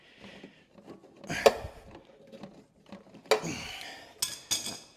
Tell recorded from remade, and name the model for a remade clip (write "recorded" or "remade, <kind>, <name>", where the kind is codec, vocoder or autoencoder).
recorded